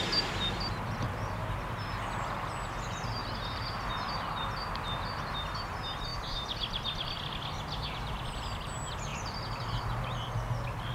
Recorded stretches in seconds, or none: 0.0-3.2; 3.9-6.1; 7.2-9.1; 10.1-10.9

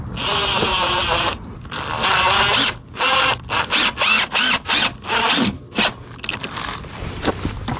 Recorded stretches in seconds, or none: 0.0-7.8

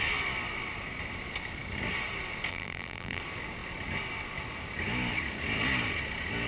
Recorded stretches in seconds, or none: 0.0-2.5; 3.2-6.5

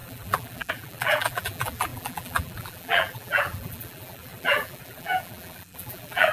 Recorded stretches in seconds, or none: none

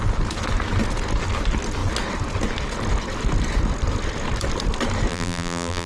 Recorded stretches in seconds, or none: 0.0-5.1

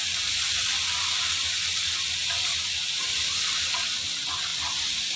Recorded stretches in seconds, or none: 0.0-4.5